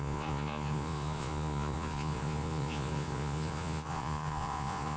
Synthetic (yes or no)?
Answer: yes